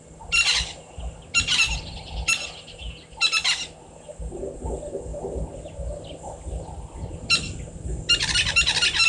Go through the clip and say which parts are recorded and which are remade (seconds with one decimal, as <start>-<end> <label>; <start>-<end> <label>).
0.0-9.1 recorded